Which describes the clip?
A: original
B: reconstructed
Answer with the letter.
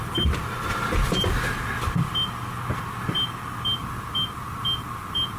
A